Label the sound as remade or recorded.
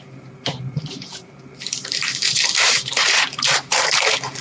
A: remade